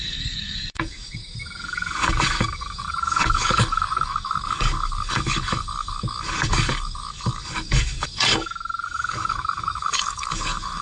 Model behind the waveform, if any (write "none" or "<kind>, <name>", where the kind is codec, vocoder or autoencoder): codec, DAC